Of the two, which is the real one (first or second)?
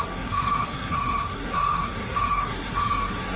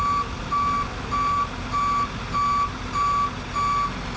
second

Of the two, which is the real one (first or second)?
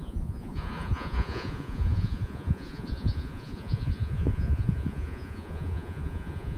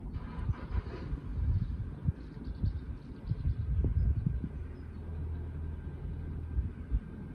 second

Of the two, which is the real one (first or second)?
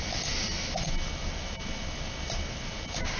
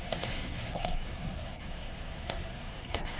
first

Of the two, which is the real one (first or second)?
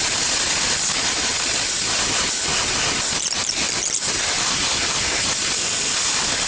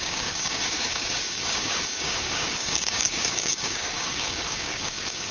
first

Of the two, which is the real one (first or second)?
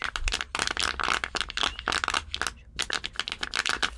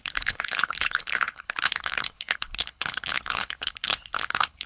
first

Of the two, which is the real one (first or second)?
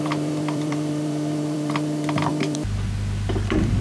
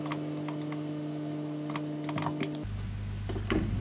second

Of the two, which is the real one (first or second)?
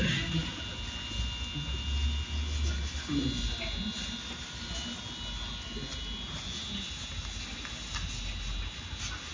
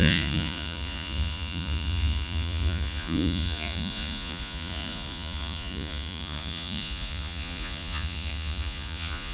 first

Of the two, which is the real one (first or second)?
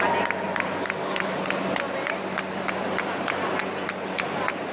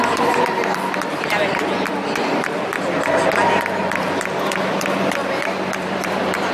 first